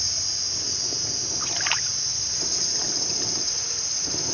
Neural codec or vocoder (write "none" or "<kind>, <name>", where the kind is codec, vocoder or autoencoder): none